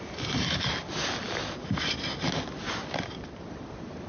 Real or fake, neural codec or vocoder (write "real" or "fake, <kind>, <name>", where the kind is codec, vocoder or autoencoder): real